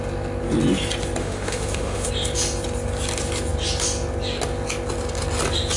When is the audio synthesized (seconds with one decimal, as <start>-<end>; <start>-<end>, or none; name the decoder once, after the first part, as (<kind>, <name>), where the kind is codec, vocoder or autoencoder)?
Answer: 1.2-2.1 (autoencoder, DAC-VAE)